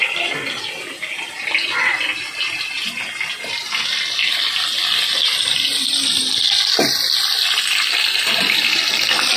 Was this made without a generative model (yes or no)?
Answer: no